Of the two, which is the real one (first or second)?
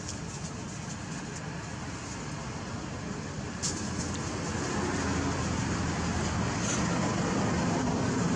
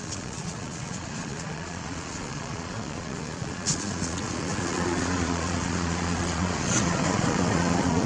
first